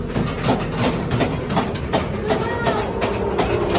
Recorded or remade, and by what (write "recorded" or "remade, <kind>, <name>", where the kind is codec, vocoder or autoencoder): recorded